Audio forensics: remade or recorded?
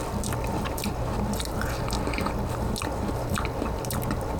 recorded